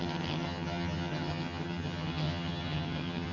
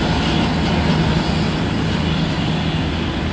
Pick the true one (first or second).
second